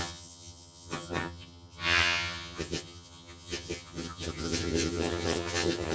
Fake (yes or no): yes